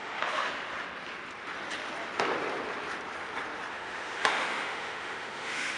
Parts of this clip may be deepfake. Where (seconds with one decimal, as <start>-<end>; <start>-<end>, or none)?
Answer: 0.0-0.5; 3.7-5.8